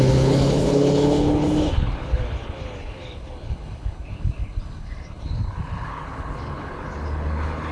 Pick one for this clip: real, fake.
fake